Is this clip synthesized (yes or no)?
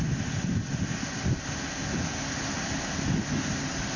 no